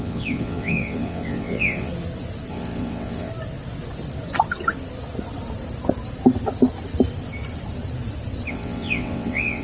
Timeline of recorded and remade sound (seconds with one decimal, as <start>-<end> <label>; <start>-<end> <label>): 0.0-1.9 remade; 1.9-2.5 recorded; 2.5-3.3 remade; 3.3-8.5 recorded; 8.5-9.6 remade